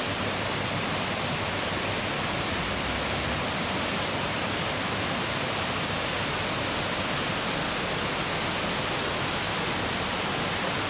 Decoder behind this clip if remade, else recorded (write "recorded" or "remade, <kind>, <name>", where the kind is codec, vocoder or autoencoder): recorded